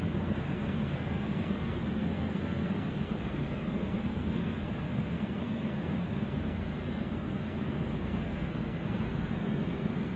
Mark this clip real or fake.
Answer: fake